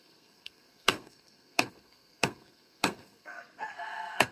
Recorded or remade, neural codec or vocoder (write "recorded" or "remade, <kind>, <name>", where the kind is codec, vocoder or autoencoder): remade, codec, SNAC